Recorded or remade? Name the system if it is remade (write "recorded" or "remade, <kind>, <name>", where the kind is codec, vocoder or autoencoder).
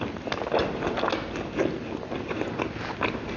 recorded